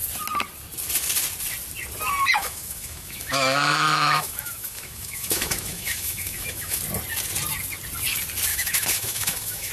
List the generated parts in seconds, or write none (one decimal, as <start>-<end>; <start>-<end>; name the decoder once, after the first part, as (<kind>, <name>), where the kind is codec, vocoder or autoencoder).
2.4-6.8 (autoencoder, DAC-VAE); 8.5-9.7